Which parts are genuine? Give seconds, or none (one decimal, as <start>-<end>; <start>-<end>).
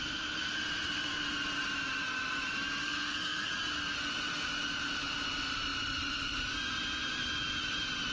0.0-2.8; 3.5-8.1